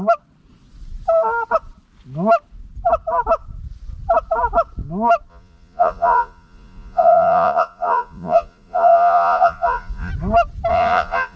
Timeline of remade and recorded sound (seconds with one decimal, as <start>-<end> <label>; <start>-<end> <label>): 0.0-5.3 recorded; 5.3-10.1 remade; 10.1-10.7 recorded; 10.7-11.4 remade